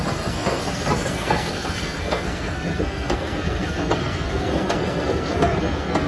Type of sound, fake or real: fake